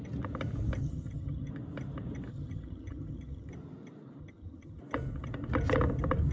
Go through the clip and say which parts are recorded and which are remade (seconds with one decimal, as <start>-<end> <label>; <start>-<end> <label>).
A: 0.0-0.8 recorded; 0.8-1.5 remade; 1.5-2.3 recorded; 2.3-3.5 remade; 3.5-4.2 recorded; 4.2-4.8 remade; 4.8-6.3 recorded